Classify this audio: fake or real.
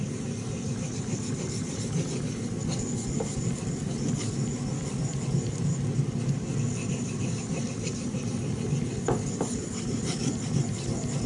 real